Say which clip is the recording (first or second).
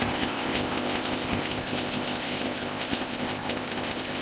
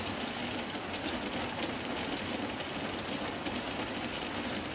second